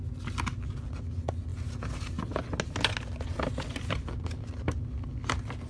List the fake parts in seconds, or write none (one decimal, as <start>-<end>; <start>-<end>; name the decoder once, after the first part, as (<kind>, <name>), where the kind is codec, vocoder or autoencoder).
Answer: none